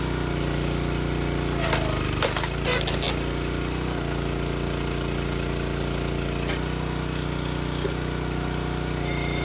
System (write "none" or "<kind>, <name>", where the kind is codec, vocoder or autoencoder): none